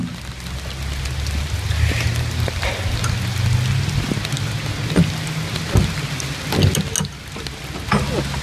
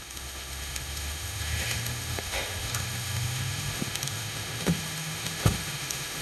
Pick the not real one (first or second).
second